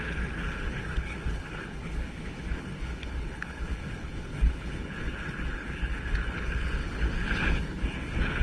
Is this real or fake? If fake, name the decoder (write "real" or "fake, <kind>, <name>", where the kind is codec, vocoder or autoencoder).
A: fake, codec, HILCodec